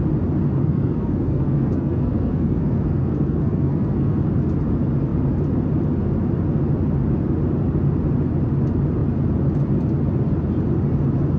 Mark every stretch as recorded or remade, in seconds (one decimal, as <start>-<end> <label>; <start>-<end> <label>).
0.0-0.6 recorded; 0.6-4.2 remade; 4.2-11.4 recorded